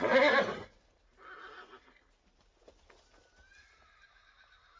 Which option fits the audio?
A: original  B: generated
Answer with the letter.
A